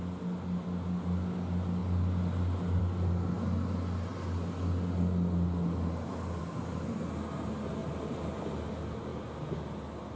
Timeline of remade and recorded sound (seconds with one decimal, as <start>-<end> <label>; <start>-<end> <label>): 0.0-10.2 recorded